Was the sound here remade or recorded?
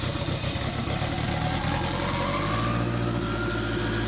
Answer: recorded